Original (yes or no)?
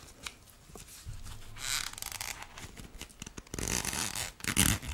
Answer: yes